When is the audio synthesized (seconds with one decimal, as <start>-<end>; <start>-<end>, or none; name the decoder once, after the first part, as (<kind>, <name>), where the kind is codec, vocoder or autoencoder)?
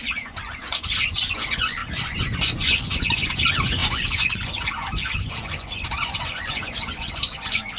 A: 0.0-7.8 (vocoder, Vocos)